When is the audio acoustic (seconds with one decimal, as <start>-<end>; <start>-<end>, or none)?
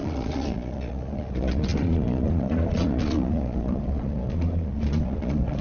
none